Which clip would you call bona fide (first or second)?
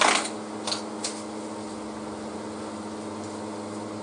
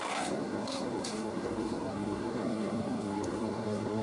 first